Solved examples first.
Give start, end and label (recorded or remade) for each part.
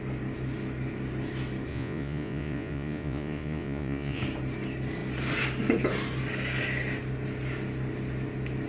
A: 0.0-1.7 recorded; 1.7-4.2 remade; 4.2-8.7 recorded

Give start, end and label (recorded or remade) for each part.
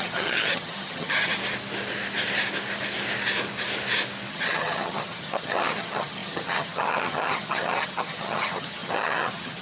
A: 0.0-1.4 remade; 1.4-4.3 recorded; 4.3-9.6 remade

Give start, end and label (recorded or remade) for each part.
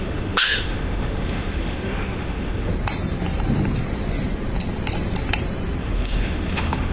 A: 0.0-2.7 remade; 2.7-5.8 recorded; 5.8-6.9 remade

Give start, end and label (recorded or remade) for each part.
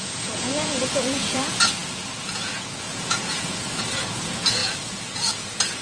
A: 0.0-5.8 remade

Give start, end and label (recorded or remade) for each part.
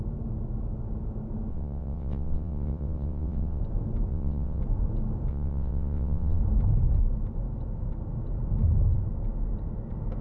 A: 0.0-1.5 recorded; 1.5-3.6 remade; 3.6-4.1 recorded; 4.1-4.6 remade; 4.6-5.3 recorded; 5.3-6.4 remade; 6.4-10.2 recorded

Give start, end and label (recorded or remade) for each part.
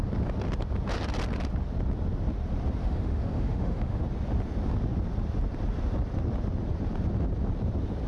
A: 0.0-2.8 recorded; 2.8-4.0 remade; 4.0-8.1 recorded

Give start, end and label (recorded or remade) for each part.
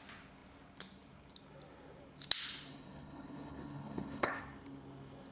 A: 0.0-2.7 recorded; 2.7-4.4 remade; 4.4-5.3 recorded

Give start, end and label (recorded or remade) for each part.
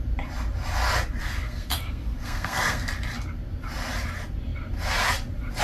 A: 0.0-1.2 recorded; 1.2-2.9 remade; 2.9-5.6 recorded